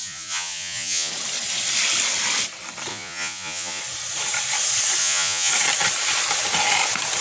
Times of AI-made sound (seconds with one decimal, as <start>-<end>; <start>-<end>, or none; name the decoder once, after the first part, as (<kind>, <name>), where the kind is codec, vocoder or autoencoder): 0.0-1.1 (vocoder, Vocos); 2.9-3.8; 5.0-5.5